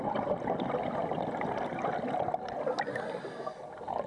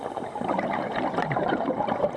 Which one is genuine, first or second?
first